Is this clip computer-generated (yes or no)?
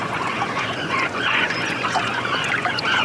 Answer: yes